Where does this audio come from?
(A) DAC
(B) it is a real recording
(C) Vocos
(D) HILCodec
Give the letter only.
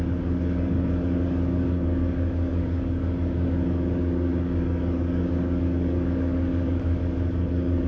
A